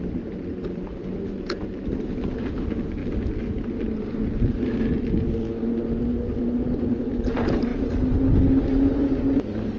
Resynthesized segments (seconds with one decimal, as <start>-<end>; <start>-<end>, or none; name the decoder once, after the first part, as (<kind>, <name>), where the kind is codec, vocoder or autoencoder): none